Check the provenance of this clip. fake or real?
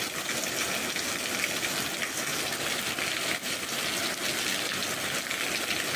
real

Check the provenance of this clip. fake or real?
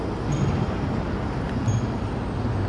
real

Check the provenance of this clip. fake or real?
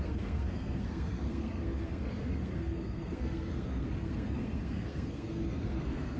fake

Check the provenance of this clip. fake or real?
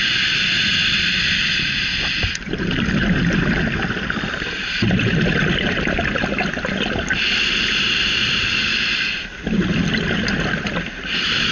real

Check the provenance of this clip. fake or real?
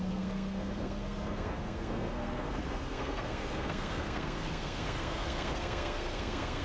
fake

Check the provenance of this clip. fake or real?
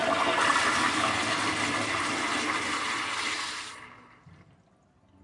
real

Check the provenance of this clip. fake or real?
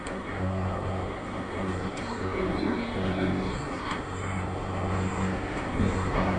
fake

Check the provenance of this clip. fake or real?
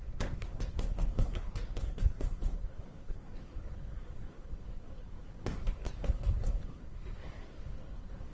fake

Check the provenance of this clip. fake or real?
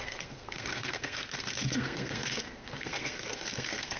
fake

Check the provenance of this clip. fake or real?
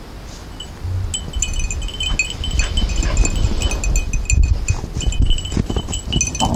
real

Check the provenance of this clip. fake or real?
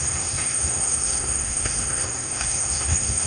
fake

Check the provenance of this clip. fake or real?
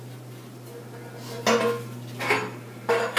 real